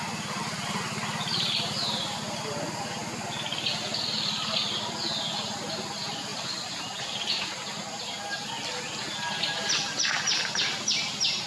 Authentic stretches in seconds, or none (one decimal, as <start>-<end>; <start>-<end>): 0.0-11.5